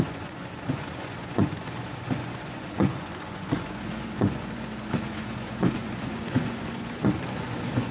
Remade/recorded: remade